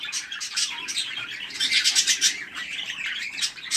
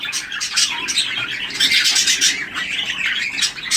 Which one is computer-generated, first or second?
first